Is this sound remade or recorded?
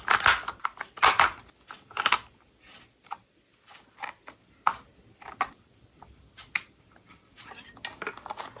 recorded